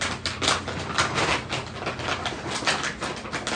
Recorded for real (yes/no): yes